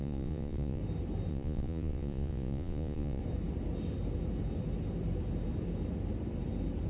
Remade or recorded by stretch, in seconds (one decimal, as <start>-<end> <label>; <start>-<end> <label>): 0.0-0.8 remade; 0.8-1.3 recorded; 1.3-3.2 remade; 3.2-6.9 recorded